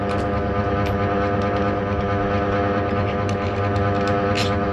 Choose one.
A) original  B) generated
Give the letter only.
A